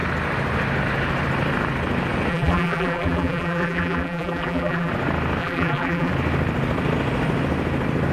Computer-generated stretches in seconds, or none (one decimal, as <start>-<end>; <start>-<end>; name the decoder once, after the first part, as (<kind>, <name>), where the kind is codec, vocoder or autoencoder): 2.3-4.9 (vocoder, BigVGAN v2); 5.4-6.1